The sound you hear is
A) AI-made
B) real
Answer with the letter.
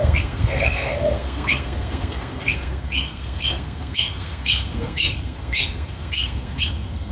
A